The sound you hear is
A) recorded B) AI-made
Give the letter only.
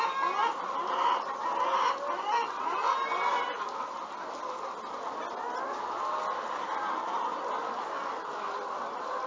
A